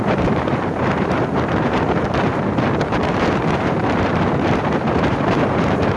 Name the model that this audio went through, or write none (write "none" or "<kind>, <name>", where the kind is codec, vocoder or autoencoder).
vocoder, BigVGAN v2